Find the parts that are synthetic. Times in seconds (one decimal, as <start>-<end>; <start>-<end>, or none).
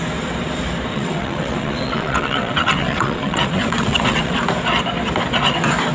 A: 0.9-4.4